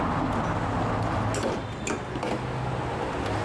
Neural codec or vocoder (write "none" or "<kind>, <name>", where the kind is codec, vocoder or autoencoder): none